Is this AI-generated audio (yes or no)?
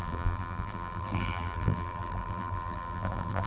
yes